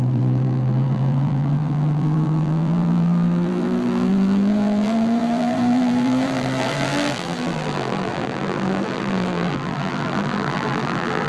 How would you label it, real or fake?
fake